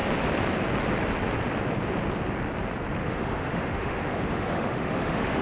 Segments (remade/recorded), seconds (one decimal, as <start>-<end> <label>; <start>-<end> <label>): 0.0-3.0 recorded; 3.0-5.4 remade